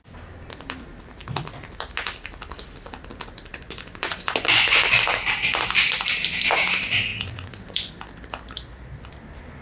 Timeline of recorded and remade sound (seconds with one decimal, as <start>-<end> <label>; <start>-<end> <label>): 0.0-3.5 recorded; 3.5-5.0 remade; 5.0-7.1 recorded; 7.1-7.9 remade; 7.9-9.6 recorded